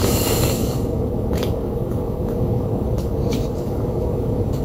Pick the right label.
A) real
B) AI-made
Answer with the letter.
B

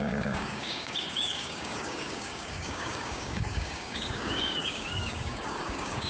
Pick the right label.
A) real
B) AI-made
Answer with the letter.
B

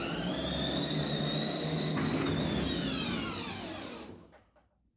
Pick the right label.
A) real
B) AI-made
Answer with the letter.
A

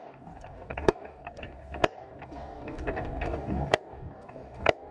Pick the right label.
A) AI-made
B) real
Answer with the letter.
A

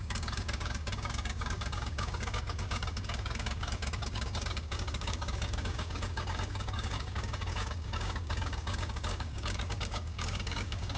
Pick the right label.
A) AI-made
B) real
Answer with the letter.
A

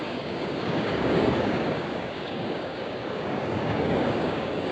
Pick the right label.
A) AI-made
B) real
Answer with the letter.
A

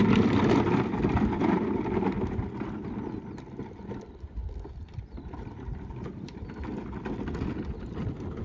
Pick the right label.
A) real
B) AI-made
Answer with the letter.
A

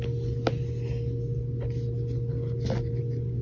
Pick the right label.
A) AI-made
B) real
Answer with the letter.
B